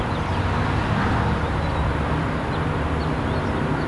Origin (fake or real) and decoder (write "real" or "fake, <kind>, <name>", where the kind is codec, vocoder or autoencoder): real